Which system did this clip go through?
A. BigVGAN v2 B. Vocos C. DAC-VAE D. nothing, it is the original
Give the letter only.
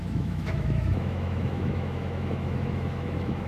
C